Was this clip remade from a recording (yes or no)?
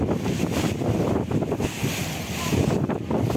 no